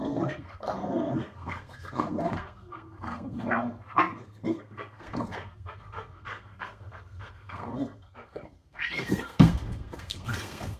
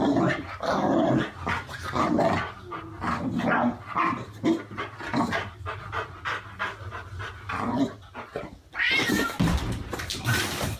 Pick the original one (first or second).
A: second